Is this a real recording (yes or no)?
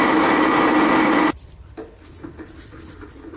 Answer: yes